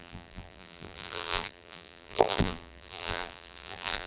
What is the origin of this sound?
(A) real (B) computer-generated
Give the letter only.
B